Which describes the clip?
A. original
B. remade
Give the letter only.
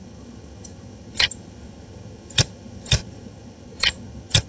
B